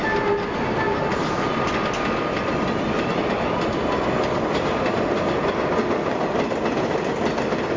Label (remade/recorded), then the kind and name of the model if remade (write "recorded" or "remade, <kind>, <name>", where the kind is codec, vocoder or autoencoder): recorded